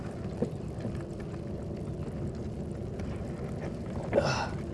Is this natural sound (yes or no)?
yes